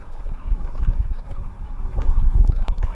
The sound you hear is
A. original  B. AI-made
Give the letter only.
B